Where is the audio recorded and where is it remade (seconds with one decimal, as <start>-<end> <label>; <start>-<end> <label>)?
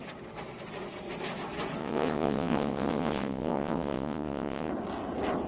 0.0-1.8 recorded; 1.8-4.7 remade; 4.7-5.5 recorded